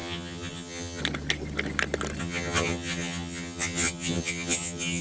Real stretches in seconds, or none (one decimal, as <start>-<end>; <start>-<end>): 1.0-2.2